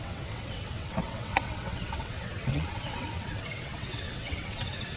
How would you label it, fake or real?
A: fake